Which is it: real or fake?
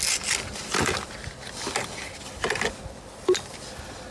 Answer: real